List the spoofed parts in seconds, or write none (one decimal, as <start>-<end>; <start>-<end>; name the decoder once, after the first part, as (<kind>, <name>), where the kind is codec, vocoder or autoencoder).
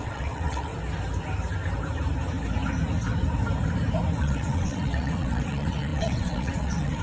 0.0-0.7 (vocoder, WaveNeXt); 4.2-7.0